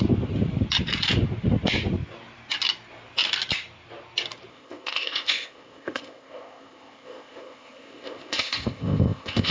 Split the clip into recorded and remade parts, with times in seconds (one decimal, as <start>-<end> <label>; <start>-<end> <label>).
0.0-4.5 recorded; 4.5-9.5 remade